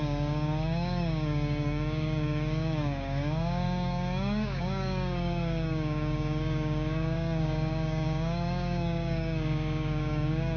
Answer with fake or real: fake